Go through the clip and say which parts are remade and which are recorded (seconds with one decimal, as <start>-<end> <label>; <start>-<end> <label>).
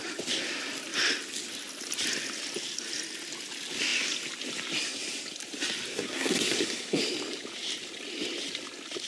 0.0-5.9 recorded; 5.9-7.0 remade; 7.0-9.1 recorded